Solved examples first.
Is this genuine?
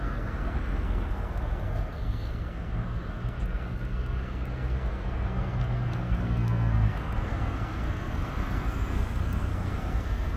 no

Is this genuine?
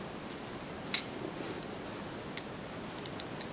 yes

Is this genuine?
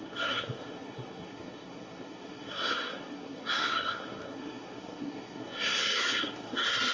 no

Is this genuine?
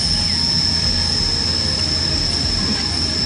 yes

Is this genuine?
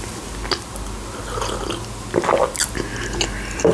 yes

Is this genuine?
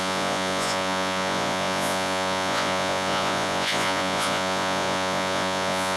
no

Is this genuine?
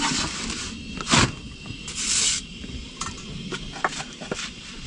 yes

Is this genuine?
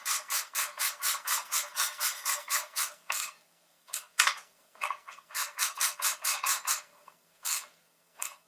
no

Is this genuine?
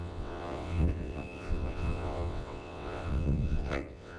no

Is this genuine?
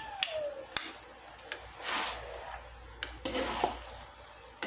yes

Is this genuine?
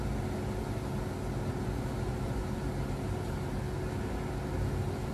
yes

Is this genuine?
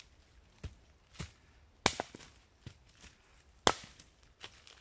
yes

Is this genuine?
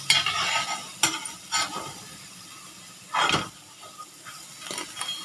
yes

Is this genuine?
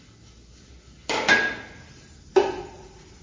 yes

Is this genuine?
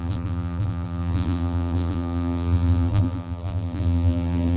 no